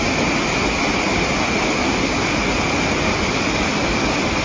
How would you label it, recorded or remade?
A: recorded